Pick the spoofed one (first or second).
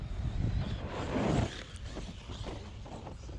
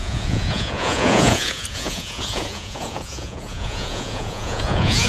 second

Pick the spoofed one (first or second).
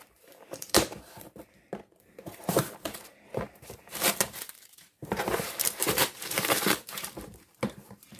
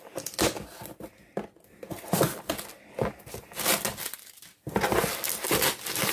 first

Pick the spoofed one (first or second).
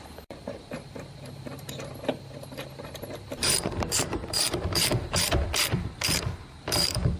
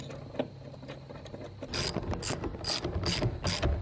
first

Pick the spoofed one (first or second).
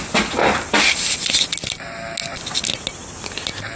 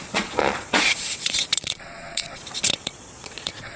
second